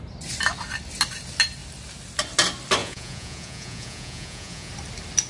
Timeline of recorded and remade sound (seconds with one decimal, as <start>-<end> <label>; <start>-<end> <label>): 0.0-2.8 recorded; 2.8-4.7 remade; 4.7-5.3 recorded